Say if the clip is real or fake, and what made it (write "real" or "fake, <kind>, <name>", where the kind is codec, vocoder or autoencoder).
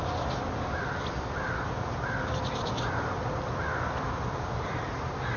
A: real